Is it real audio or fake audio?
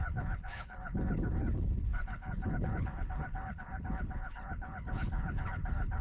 fake